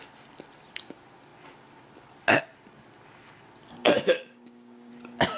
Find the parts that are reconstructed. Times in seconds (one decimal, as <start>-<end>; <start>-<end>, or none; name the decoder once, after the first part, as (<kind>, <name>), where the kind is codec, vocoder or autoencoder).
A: 3.8-4.9 (codec, DAC)